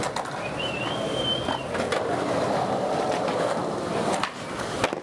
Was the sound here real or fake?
real